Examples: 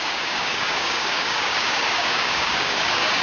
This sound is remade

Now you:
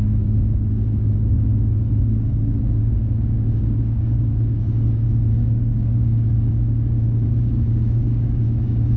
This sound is remade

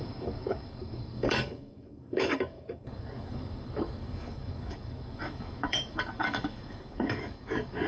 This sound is remade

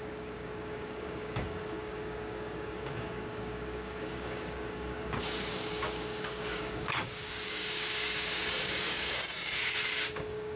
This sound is remade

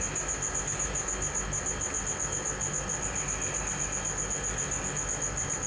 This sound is recorded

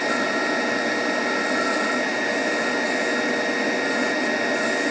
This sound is recorded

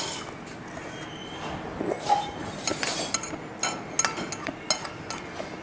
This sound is recorded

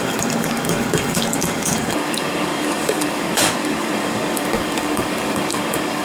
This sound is remade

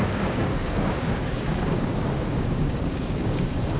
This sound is remade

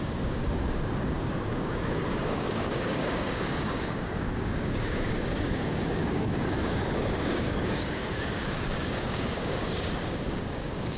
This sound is remade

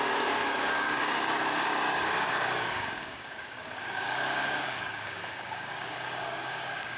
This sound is remade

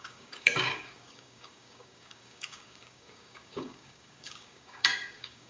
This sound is remade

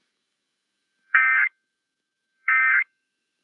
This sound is remade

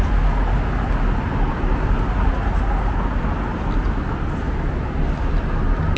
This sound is recorded